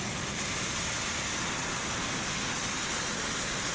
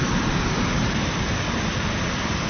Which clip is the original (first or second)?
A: first